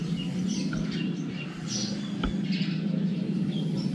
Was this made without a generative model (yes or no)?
yes